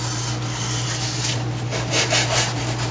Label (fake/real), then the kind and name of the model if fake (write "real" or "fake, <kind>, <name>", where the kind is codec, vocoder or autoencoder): real